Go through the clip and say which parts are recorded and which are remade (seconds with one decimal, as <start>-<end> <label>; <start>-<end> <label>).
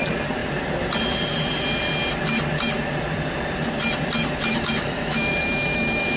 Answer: 0.0-4.5 recorded; 4.5-6.2 remade